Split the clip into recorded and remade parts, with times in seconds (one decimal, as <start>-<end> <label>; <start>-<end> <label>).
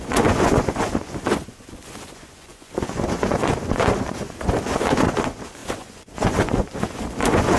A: 0.0-7.6 remade